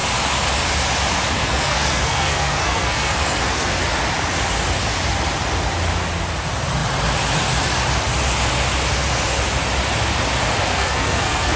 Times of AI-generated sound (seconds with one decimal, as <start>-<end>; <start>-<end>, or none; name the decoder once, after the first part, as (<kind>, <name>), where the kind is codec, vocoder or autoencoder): 1.4-3.8 (codec, SNAC); 10.7-11.6